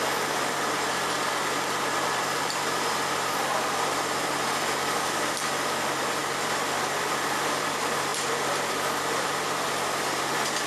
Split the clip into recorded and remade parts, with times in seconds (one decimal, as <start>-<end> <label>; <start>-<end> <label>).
0.0-10.7 remade